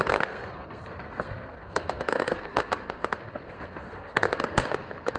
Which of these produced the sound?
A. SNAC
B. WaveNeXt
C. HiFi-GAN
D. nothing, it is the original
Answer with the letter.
A